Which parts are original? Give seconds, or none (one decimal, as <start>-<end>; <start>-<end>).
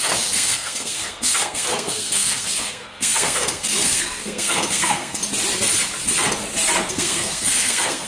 5.2-6.9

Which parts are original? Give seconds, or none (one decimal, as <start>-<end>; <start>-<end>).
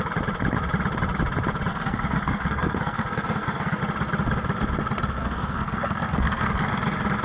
0.0-1.7; 3.8-5.2; 6.8-7.2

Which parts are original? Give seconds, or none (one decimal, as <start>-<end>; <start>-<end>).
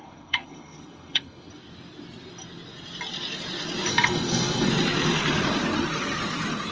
1.5-3.9; 4.7-6.7